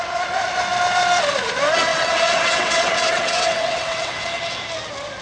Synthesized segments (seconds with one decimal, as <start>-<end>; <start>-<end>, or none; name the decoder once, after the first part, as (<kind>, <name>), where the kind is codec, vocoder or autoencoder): 1.9-4.2 (vocoder, WaveNeXt)